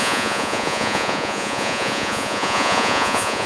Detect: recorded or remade remade